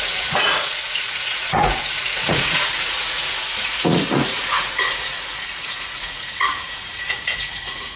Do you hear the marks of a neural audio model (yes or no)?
yes